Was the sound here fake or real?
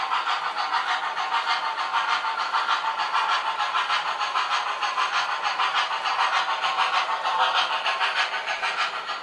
real